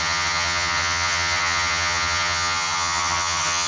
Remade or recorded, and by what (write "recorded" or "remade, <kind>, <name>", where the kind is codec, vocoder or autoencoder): remade, vocoder, HiFi-GAN